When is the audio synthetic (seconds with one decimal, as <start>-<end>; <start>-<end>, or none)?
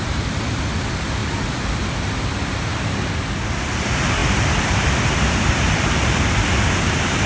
none